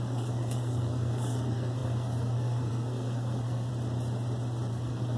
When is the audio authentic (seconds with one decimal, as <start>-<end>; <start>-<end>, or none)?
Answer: 3.7-4.7